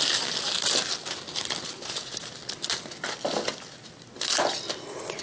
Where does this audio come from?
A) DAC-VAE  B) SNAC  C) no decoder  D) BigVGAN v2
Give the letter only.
C